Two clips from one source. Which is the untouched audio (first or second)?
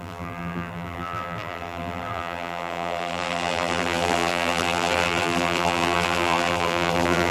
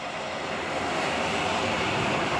second